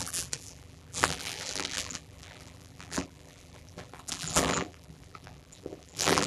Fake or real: fake